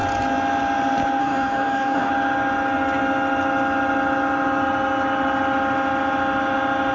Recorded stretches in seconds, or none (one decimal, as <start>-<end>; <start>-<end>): 0.0-1.2; 2.1-6.9

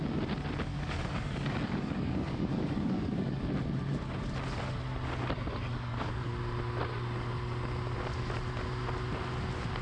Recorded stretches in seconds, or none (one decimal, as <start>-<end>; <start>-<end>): 0.0-0.7; 3.5-5.7; 6.3-9.8

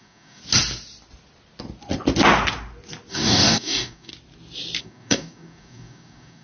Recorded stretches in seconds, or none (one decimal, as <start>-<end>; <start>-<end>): 0.4-3.1; 4.1-4.8

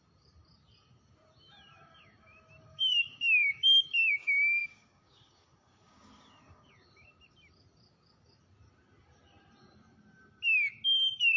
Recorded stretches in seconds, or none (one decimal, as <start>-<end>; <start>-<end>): 0.0-2.7; 4.1-4.6; 6.7-11.4

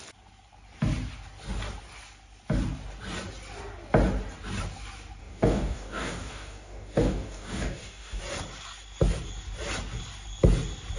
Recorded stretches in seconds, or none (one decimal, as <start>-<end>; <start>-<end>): 0.0-5.2; 8.2-11.0